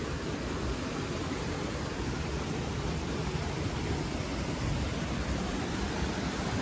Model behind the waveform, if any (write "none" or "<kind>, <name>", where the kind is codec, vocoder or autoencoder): none